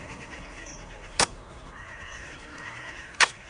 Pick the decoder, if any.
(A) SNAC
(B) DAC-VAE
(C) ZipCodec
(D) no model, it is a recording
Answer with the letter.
A